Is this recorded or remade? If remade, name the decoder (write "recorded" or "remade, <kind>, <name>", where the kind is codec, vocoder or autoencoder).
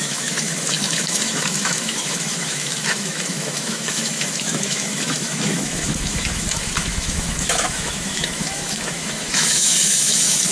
remade, autoencoder, DAC-VAE